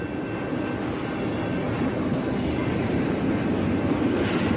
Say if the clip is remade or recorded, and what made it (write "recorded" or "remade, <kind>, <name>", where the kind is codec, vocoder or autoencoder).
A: recorded